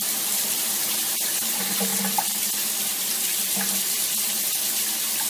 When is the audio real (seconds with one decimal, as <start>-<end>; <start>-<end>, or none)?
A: 0.0-5.3